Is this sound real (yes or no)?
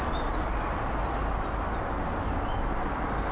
yes